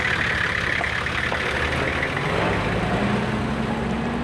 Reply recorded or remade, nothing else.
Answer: recorded